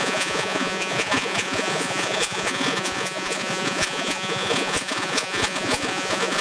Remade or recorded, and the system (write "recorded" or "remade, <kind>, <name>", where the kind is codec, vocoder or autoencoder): remade, vocoder, Vocos